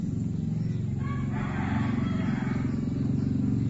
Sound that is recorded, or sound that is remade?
recorded